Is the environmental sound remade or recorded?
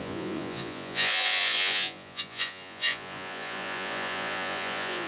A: remade